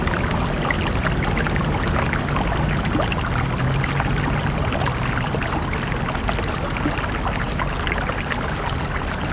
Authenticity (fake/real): real